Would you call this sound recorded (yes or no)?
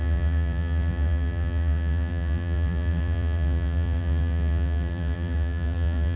no